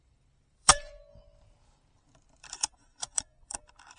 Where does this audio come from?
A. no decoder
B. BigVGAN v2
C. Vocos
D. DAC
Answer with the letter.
B